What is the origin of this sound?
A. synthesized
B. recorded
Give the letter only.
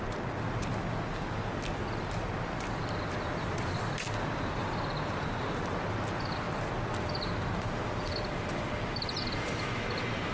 B